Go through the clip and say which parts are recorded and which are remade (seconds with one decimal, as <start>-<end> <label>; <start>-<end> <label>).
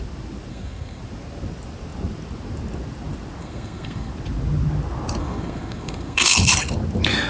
0.0-0.5 recorded; 0.5-1.0 remade; 1.0-3.4 recorded; 3.4-4.1 remade; 4.1-5.2 recorded; 5.2-6.4 remade; 6.4-7.3 recorded